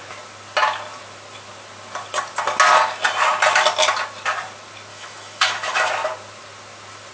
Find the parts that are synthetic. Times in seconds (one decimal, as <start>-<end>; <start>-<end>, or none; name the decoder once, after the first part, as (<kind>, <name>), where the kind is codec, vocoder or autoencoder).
4.9-5.9 (autoencoder, DAC-VAE)